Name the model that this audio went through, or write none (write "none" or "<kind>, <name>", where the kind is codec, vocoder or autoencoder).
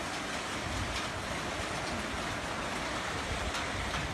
none